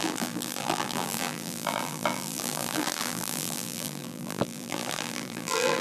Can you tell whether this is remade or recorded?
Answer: remade